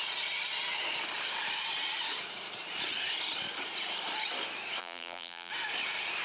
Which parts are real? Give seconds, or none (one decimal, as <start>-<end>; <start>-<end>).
0.0-4.8; 5.5-6.2